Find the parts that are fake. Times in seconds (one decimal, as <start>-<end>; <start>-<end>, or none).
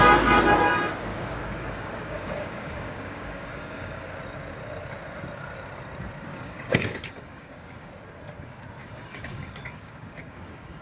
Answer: 1.1-4.1; 6.3-7.9; 8.8-10.8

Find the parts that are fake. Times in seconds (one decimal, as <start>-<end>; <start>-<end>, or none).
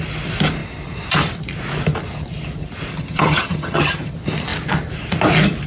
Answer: 2.9-4.1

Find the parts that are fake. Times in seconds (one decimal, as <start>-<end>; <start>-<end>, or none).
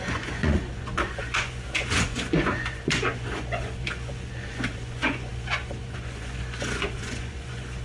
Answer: 0.0-7.8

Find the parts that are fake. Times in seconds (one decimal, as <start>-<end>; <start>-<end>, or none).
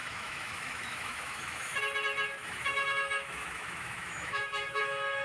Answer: 0.0-1.8; 2.4-4.8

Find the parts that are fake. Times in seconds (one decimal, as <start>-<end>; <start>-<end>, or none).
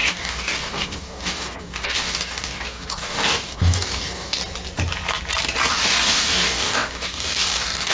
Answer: 0.0-4.4; 5.7-7.9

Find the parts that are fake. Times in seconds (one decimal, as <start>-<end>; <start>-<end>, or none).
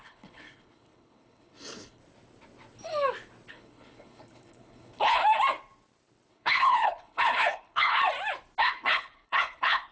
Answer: 0.0-2.0; 3.5-5.2; 6.3-8.0; 8.6-9.9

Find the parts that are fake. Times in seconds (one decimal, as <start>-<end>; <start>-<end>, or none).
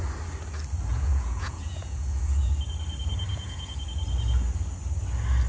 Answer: 0.9-2.5; 3.3-3.8